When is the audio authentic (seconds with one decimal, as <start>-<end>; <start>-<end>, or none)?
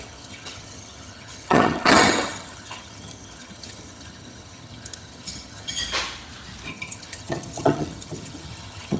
5.8-6.7